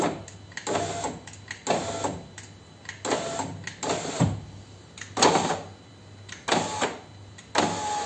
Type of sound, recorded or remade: recorded